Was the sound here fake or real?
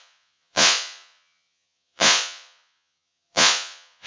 fake